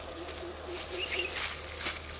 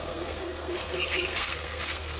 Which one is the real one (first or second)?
first